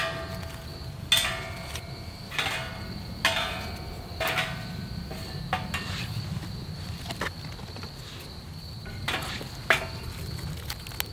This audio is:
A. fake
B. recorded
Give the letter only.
B